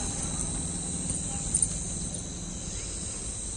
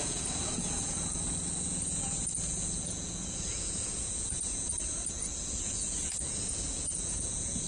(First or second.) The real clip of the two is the first